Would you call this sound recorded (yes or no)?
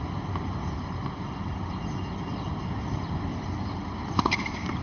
yes